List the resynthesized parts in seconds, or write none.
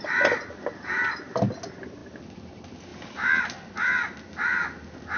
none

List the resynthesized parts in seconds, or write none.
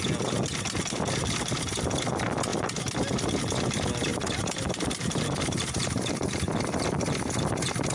4.1-6.5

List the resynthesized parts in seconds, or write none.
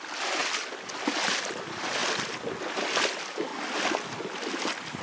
0.0-2.0; 3.1-3.5; 4.2-5.0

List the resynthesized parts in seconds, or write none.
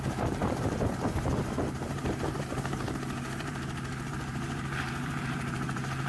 0.0-6.1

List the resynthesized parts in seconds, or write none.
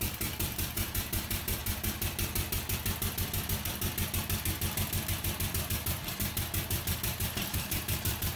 0.0-1.6; 5.5-8.4